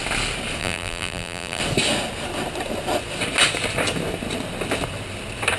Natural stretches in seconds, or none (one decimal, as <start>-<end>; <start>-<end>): 0.0-0.6; 1.6-5.6